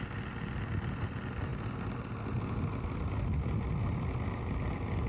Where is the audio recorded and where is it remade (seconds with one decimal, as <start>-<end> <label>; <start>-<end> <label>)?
0.0-5.1 recorded